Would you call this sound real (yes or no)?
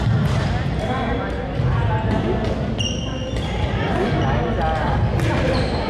yes